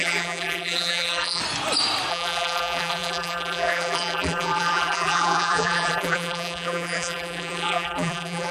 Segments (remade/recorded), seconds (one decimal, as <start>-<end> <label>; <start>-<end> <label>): 0.0-1.4 remade; 1.4-2.1 recorded; 2.1-8.5 remade